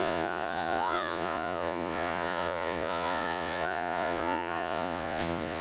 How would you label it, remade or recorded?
remade